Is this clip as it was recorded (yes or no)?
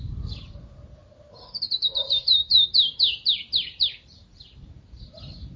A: no